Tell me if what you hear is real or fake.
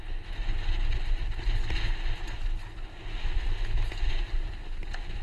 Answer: real